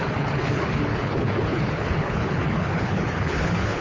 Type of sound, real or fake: fake